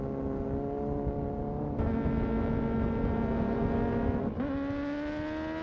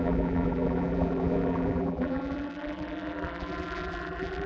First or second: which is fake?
second